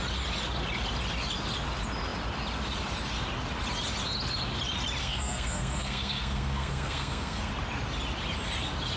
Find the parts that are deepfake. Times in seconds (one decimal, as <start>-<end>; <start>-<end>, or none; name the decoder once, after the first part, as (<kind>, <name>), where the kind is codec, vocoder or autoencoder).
5.0-7.5 (codec, SNAC)